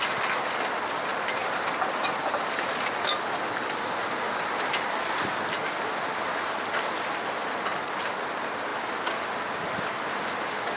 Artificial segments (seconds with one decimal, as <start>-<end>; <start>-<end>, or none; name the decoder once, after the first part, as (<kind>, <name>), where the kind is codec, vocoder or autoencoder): none